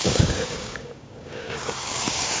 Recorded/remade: remade